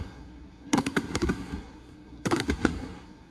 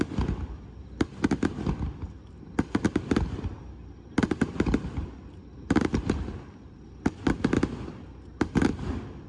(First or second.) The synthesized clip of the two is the first